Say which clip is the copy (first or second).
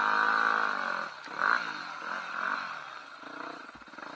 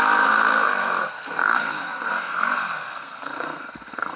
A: second